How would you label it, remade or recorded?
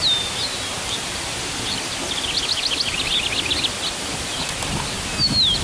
recorded